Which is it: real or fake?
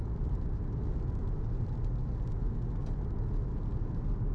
real